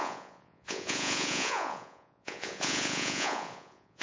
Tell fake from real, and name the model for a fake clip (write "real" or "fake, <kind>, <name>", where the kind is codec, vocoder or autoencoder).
fake, vocoder, Vocos